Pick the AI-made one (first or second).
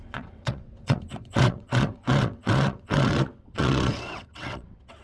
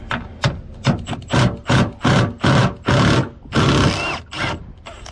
first